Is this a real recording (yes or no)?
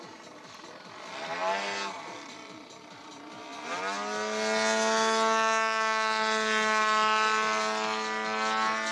yes